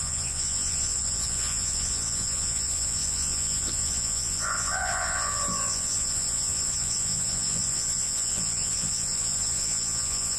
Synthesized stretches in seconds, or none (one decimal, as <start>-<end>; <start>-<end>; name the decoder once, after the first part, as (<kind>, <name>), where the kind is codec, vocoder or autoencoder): 0.0-10.4 (vocoder, Vocos)